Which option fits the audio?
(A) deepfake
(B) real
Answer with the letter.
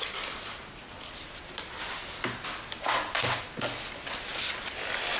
B